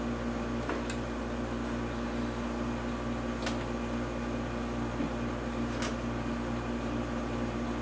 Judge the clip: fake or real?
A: real